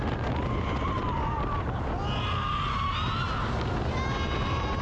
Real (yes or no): yes